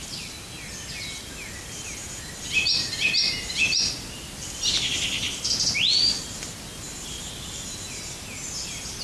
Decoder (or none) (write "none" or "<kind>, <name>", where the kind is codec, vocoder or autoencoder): none